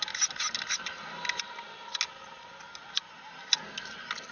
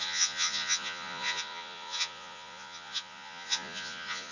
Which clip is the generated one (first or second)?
second